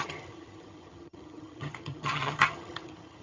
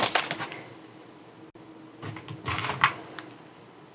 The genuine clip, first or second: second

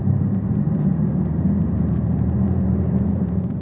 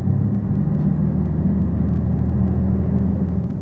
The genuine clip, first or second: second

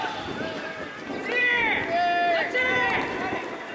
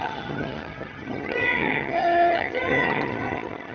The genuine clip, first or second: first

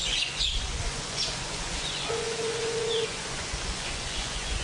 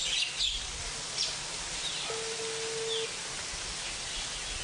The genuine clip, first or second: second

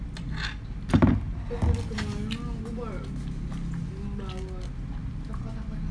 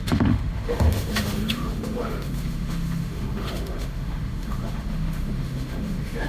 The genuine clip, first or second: first